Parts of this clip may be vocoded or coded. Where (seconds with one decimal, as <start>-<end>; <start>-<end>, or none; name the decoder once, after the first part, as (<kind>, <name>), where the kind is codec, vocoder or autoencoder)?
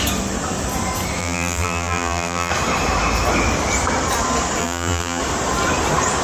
1.2-2.5 (vocoder, BigVGAN v2); 4.6-5.2